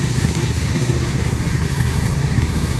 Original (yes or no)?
no